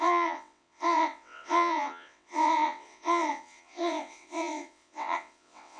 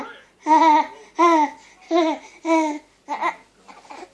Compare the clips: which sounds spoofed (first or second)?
first